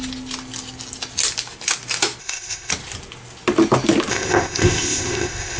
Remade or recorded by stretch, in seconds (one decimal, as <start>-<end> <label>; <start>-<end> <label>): 0.0-2.2 recorded; 2.2-2.7 remade; 2.7-4.1 recorded; 4.1-5.6 remade